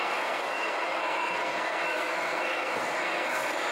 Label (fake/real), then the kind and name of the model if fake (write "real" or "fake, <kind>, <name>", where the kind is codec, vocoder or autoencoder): fake, codec, SNAC